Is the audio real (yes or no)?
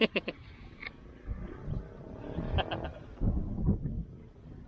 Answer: yes